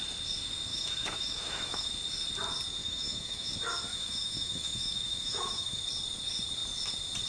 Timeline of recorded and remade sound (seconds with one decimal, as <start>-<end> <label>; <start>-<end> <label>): 0.0-0.7 recorded; 0.7-1.9 remade; 1.9-2.8 recorded; 2.8-3.5 remade; 3.5-3.9 recorded; 3.9-5.8 remade; 5.8-7.3 recorded